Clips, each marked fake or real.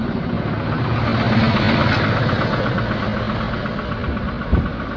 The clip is real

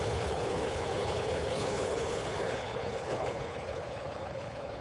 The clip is fake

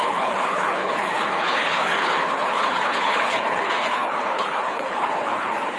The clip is fake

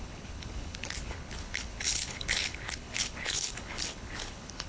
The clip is fake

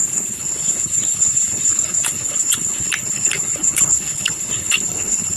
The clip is fake